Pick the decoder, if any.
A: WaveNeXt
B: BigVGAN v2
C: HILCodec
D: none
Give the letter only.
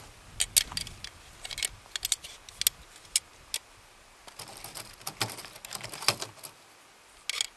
D